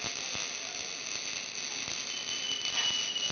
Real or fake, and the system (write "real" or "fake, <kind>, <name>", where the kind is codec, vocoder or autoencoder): real